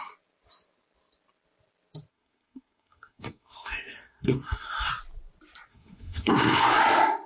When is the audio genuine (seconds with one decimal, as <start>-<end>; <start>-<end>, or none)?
0.0-2.1; 4.9-5.7; 6.3-7.3